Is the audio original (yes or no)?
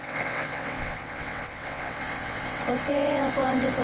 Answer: no